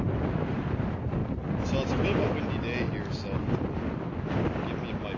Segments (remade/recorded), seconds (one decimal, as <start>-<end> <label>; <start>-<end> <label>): 0.0-5.2 recorded